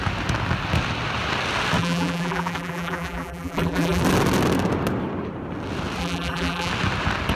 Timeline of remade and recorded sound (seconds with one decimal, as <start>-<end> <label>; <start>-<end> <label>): 0.0-1.8 recorded; 1.8-4.0 remade; 4.0-6.0 recorded; 6.0-6.7 remade; 6.7-7.3 recorded